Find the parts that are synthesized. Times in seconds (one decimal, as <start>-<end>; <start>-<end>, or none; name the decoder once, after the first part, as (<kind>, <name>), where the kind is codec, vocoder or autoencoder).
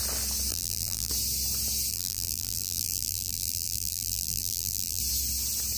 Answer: 0.5-1.1 (vocoder, BigVGAN v2); 1.9-5.0